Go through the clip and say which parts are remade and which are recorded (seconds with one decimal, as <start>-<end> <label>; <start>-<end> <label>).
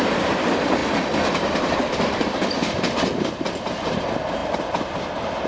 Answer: 0.0-5.5 recorded